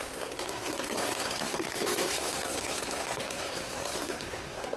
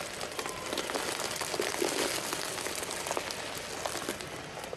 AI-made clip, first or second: first